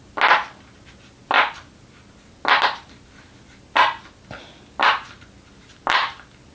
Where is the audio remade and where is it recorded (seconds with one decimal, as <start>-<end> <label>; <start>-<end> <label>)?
0.0-6.5 recorded